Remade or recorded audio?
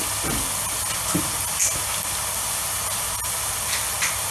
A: recorded